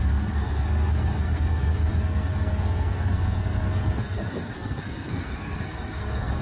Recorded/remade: remade